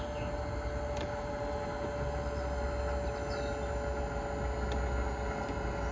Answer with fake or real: real